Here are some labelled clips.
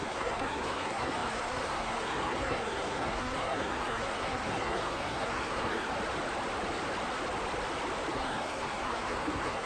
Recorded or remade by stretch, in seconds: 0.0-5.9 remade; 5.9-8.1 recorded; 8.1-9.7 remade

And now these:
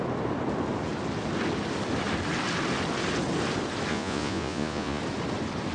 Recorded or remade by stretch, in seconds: 0.0-3.9 recorded; 3.9-5.0 remade; 5.0-5.7 recorded

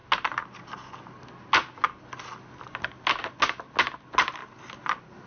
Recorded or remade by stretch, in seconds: 0.0-5.3 recorded

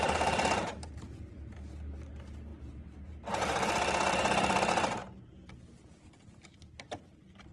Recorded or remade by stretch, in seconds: 0.0-7.5 recorded

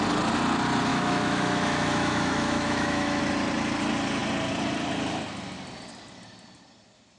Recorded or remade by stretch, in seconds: 0.0-0.9 recorded; 0.9-3.2 remade; 3.2-7.2 recorded

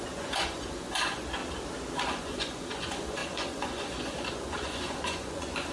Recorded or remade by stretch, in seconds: 0.0-1.4 remade; 1.4-2.0 recorded; 2.0-5.7 remade

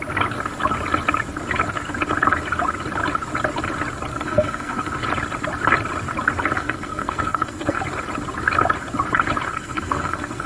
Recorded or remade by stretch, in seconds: 0.0-4.1 recorded; 4.1-4.9 remade; 4.9-6.6 recorded; 6.6-7.8 remade; 7.8-9.5 recorded; 9.5-10.5 remade